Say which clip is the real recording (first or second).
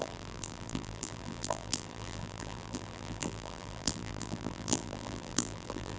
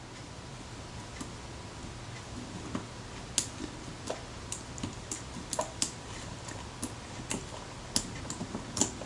second